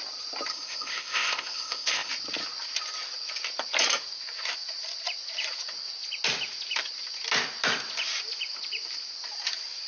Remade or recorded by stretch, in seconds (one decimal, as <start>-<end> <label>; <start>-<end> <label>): 0.0-0.5 recorded; 0.5-2.1 remade; 2.1-9.9 recorded